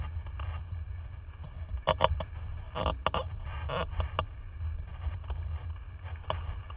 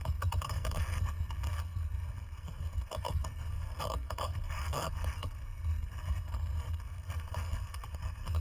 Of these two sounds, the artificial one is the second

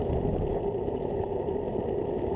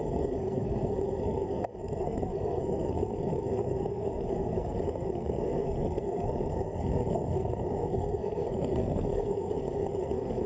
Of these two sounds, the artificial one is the second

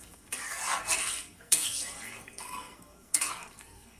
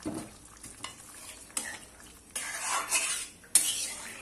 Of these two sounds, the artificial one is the first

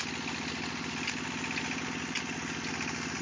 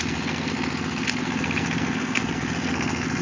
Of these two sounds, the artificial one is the second